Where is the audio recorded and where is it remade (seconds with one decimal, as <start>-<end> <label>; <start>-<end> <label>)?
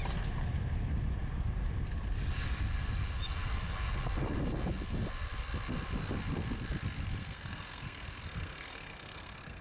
0.0-7.2 recorded; 7.2-9.6 remade